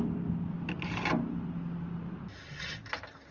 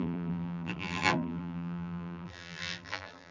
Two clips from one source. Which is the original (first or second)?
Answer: first